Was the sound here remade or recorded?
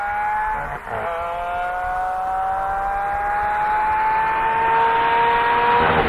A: recorded